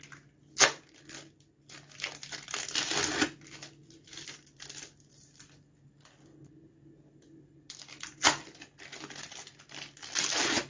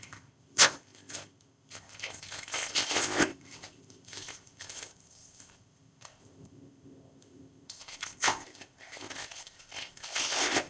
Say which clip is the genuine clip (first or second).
first